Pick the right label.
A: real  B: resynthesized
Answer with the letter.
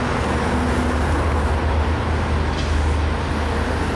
A